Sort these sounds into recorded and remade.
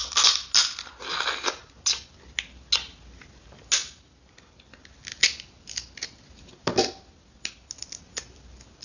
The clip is recorded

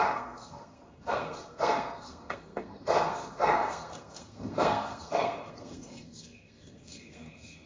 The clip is remade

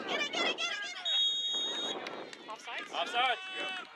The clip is recorded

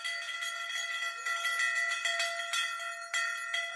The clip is recorded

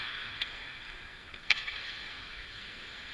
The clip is remade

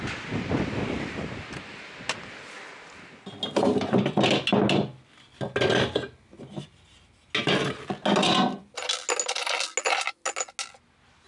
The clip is recorded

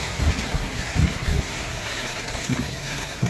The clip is remade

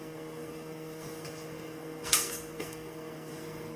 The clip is remade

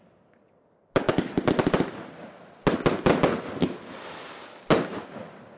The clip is recorded